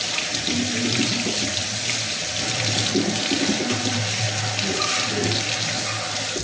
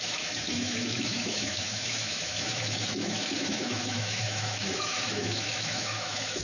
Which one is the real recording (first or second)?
first